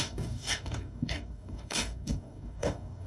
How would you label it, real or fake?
fake